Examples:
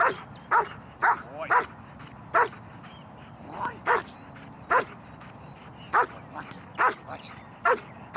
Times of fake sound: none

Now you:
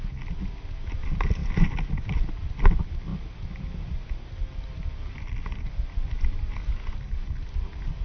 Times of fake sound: none

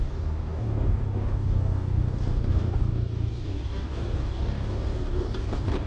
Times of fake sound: 0.0-5.9 (codec, DAC)

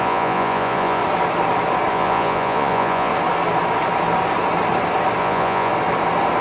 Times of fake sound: 0.0-1.0 (vocoder, Vocos); 1.9-3.1; 5.2-5.7

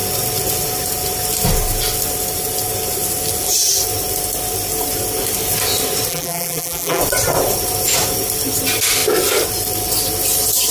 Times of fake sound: 6.1-7.0 (vocoder, BigVGAN v2)